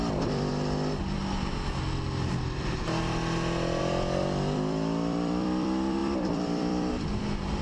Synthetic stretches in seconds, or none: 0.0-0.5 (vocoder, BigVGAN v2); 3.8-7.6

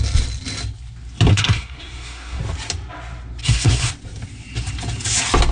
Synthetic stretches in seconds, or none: 1.3-2.4 (codec, SNAC); 3.4-3.9